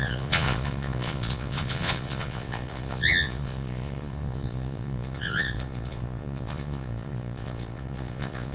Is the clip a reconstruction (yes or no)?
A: yes